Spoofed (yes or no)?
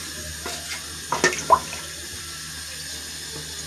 no